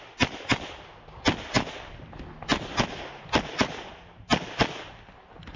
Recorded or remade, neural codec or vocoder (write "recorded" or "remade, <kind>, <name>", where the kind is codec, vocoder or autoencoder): recorded